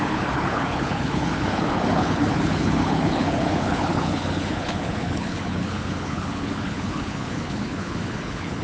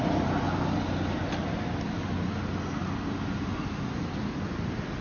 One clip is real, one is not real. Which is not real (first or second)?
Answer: first